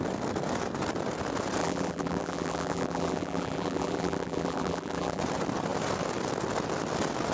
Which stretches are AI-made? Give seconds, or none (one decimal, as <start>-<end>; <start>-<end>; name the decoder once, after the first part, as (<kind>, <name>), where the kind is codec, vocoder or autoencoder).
1.6-5.2 (vocoder, BigVGAN v2)